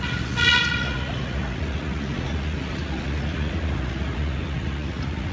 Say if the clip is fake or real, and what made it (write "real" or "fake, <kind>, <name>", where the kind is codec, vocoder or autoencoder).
fake, vocoder, Vocos